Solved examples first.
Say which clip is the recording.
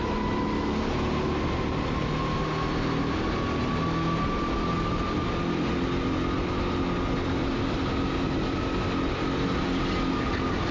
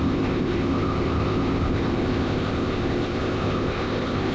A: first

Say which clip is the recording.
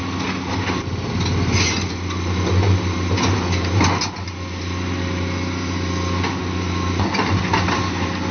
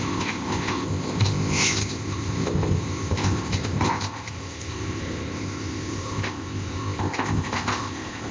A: first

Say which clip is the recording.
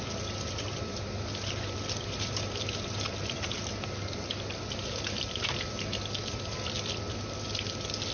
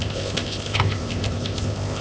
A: first